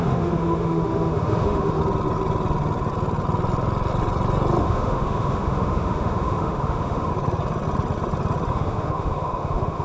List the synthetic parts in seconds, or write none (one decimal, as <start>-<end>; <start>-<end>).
0.0-1.8; 4.6-7.1; 8.5-9.8